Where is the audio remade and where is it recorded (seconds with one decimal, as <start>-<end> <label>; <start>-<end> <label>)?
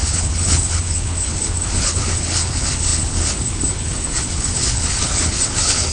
0.0-5.9 remade